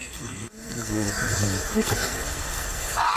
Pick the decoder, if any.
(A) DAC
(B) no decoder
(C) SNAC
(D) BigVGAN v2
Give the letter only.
C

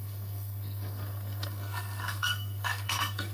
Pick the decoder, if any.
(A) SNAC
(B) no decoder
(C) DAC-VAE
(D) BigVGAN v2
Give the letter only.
A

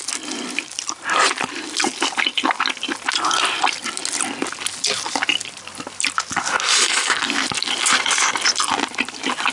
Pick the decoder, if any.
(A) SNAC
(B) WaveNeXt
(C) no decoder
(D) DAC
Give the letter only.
C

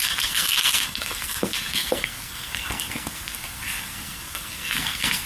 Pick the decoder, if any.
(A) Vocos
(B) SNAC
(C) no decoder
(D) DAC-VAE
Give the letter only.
B